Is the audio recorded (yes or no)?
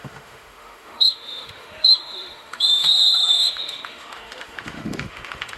no